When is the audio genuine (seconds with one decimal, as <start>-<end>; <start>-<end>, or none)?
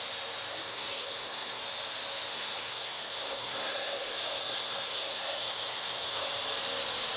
0.0-0.5; 1.6-2.3; 6.3-7.2